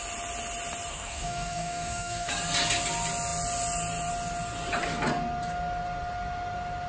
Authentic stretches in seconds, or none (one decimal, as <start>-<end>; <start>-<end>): 0.0-0.9; 2.3-6.9